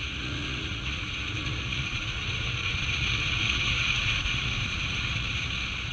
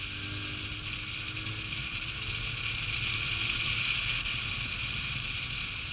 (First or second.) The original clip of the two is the second